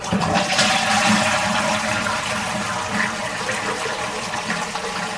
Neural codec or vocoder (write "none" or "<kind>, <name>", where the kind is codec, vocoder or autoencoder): vocoder, BigVGAN v2